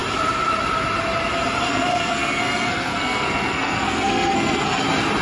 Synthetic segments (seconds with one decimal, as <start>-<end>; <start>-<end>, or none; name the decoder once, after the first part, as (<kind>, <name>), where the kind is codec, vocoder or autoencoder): 1.7-4.8 (codec, SNAC)